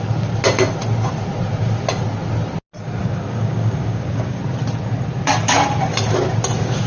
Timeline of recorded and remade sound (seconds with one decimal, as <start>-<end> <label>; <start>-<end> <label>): 0.0-3.0 recorded; 3.0-4.4 remade; 4.4-6.9 recorded